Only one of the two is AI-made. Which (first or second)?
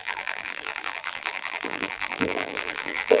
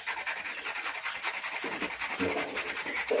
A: first